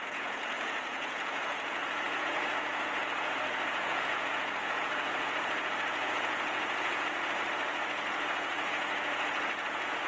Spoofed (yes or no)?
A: yes